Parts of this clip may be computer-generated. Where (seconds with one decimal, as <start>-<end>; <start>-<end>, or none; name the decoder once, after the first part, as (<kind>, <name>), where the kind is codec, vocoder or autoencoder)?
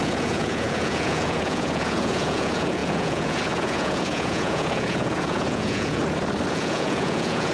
0.0-6.0 (vocoder, Vocos); 6.5-7.5